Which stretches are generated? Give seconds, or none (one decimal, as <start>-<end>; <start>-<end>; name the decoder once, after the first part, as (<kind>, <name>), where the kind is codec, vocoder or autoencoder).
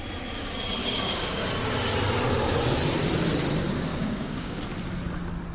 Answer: 0.8-1.4 (codec, DAC); 3.9-4.6